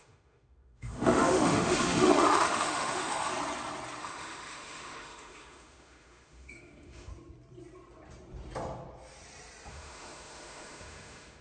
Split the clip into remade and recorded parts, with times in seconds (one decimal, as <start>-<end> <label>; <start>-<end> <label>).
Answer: 0.0-3.3 remade; 3.3-4.0 recorded; 4.0-7.1 remade; 7.1-9.7 recorded; 9.7-11.4 remade

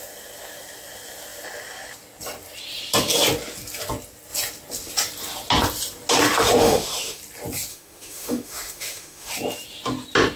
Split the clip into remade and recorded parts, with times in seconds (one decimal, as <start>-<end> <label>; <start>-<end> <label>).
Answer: 0.0-6.6 recorded; 6.6-7.2 remade; 7.2-7.7 recorded; 7.7-9.3 remade; 9.3-10.4 recorded

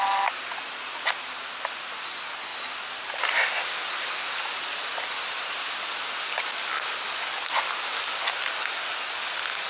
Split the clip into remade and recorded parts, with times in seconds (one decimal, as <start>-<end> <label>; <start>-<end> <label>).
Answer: 0.0-9.7 recorded

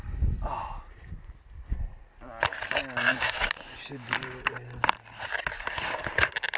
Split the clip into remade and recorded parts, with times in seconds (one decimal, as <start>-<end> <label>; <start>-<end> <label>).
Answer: 0.0-3.1 recorded; 3.1-3.6 remade; 3.6-6.6 recorded